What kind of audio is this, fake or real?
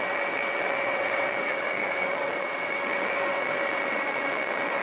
fake